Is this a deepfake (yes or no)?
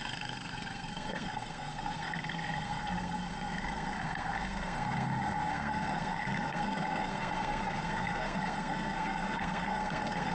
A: yes